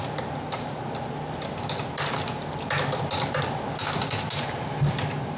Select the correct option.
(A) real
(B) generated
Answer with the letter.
A